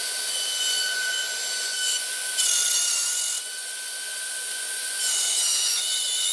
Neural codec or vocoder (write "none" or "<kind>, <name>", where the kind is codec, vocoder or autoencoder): vocoder, Vocos